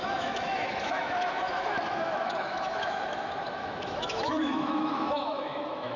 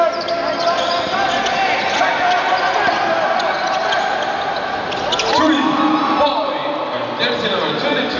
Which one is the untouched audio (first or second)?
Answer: second